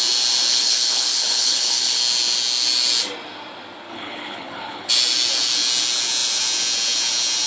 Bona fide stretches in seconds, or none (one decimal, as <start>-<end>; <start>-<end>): 0.0-0.5; 2.0-3.9; 4.9-7.5